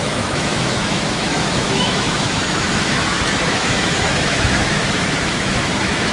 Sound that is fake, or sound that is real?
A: fake